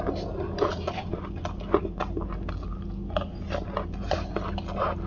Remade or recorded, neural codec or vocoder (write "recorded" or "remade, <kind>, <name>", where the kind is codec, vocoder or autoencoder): recorded